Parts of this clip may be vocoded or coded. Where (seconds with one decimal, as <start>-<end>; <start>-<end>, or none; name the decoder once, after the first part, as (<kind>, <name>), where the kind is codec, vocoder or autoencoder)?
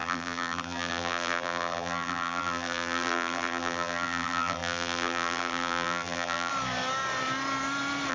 0.0-6.5 (vocoder, BigVGAN v2)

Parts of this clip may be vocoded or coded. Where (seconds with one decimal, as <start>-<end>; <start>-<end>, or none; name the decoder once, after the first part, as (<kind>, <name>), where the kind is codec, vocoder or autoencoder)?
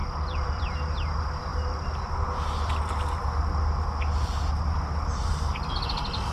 0.0-0.6 (vocoder, BigVGAN v2)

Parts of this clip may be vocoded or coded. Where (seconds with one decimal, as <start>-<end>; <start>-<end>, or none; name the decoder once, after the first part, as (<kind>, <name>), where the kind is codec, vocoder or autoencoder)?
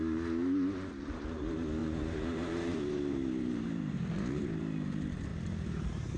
1.8-4.4 (vocoder, BigVGAN v2); 5.3-6.2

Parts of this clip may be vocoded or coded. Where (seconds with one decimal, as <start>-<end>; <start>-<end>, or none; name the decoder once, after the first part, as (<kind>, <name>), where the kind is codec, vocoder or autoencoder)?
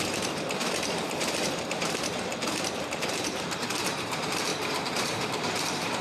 0.0-2.3 (vocoder, BigVGAN v2); 3.1-4.5; 5.0-6.0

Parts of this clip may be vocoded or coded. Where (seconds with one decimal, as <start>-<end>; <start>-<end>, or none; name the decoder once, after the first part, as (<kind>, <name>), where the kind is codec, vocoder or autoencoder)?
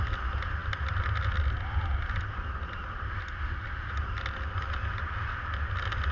none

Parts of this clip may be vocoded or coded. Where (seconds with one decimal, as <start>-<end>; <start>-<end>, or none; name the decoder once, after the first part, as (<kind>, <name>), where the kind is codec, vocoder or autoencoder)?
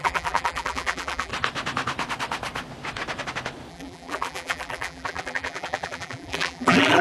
0.0-1.3 (vocoder, BigVGAN v2); 3.7-7.0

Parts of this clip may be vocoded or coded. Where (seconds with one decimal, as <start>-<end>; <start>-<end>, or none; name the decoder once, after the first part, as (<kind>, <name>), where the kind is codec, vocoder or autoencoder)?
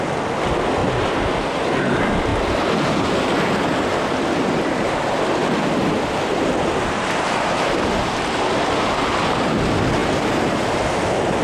0.8-1.3 (vocoder, BigVGAN v2); 2.3-2.9; 3.9-7.9; 10.0-10.9